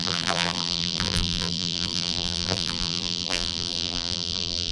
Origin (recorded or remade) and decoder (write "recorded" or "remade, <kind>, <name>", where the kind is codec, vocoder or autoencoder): remade, vocoder, BigVGAN v2